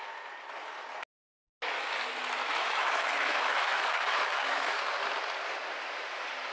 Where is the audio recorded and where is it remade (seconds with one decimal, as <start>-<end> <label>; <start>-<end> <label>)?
0.0-2.4 recorded; 2.4-5.0 remade; 5.0-6.5 recorded